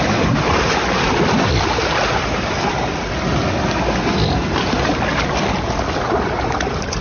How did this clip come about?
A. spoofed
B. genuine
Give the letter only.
B